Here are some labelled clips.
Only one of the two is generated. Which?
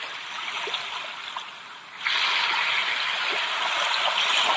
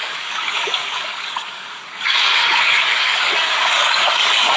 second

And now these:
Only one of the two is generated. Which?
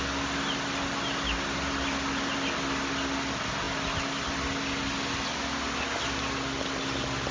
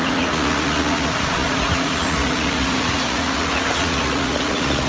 second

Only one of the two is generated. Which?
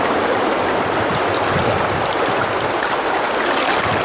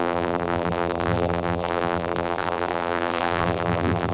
second